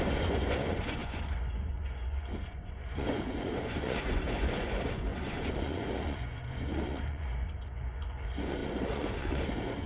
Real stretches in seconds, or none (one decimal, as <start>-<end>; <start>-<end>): none